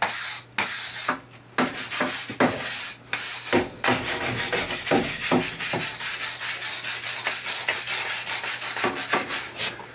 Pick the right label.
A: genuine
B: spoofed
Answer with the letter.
A